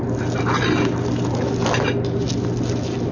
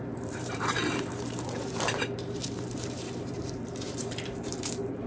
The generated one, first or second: second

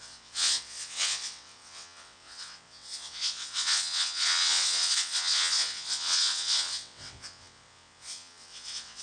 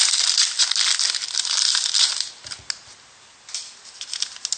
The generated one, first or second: first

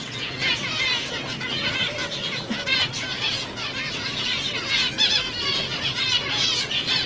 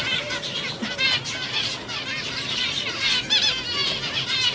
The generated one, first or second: first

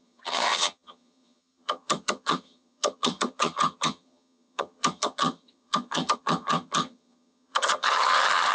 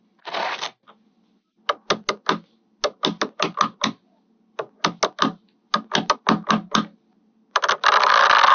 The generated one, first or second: first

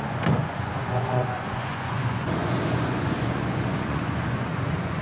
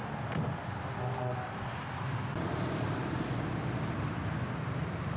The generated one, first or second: first